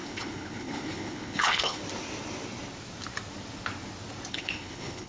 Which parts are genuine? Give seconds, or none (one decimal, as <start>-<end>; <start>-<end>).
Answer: 1.8-4.3